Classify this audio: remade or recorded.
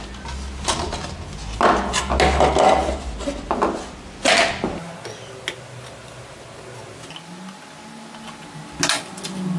recorded